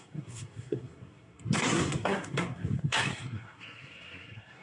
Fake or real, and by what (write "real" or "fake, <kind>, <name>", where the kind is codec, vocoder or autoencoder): fake, codec, SNAC